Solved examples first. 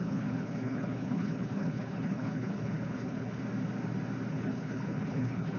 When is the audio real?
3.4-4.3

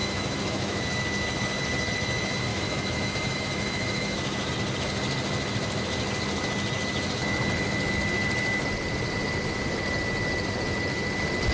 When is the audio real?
0.8-2.5; 4.5-11.5